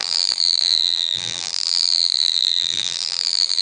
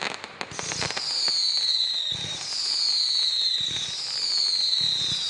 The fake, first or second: first